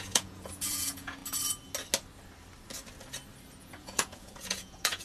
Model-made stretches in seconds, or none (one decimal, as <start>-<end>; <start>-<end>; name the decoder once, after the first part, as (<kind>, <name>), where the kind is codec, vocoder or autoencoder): 0.0-1.2 (vocoder, Vocos); 3.6-5.0